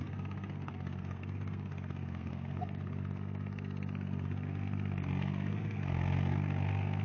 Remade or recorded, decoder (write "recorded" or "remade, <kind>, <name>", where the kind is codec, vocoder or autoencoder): remade, codec, SNAC